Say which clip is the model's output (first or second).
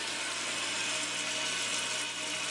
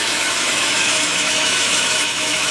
second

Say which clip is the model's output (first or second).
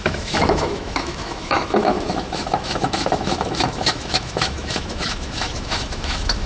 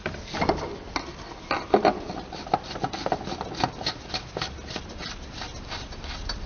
first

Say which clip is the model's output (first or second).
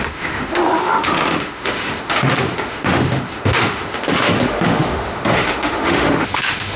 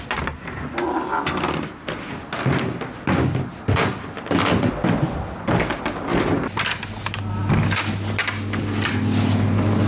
first